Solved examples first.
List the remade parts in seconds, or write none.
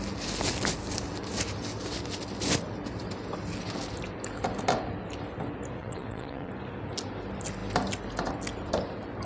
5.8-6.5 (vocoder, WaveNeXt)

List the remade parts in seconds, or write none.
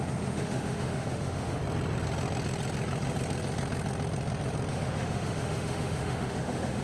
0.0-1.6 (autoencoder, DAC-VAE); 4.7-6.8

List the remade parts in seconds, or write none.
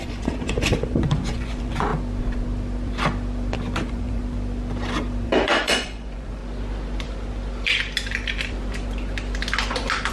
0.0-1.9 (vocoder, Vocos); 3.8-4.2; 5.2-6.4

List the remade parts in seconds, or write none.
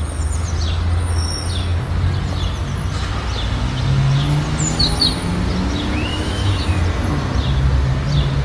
6.1-6.8 (autoencoder, DAC-VAE)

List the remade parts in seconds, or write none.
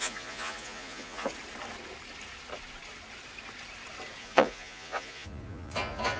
0.0-1.3 (vocoder, Vocos); 4.2-6.2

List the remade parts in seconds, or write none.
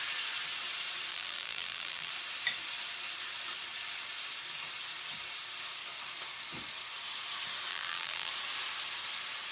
1.1-2.1 (vocoder, BigVGAN v2); 7.7-8.3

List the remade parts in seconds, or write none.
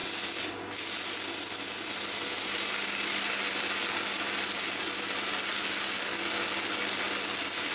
none